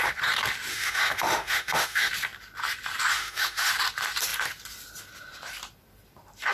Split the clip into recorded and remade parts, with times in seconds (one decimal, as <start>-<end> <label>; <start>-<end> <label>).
0.0-0.7 recorded; 0.7-2.1 remade; 2.1-3.1 recorded; 3.1-3.7 remade; 3.7-6.5 recorded